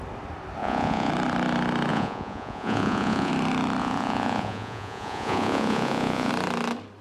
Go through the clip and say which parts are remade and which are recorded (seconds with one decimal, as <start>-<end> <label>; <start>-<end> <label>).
0.0-0.6 recorded; 0.6-1.1 remade; 1.1-1.9 recorded; 1.9-3.3 remade; 3.3-3.8 recorded; 3.8-6.3 remade; 6.3-7.0 recorded

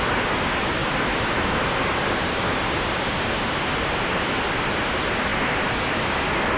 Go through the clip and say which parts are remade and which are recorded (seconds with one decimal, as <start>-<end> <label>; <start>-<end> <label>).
0.0-6.6 recorded